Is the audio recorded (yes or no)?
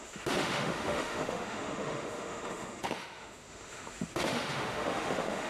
no